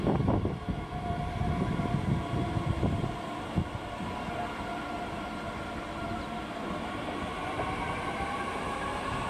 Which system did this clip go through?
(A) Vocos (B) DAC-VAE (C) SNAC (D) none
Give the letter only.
D